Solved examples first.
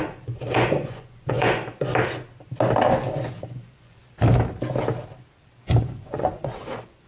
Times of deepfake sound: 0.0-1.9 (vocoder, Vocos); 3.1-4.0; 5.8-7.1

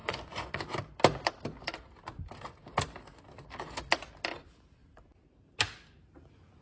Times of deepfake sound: 0.0-0.6 (vocoder, Vocos)